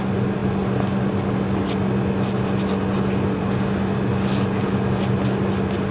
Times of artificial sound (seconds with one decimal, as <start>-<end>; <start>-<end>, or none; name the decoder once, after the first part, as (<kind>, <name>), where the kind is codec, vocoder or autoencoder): none